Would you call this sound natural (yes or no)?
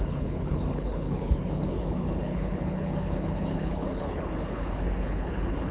no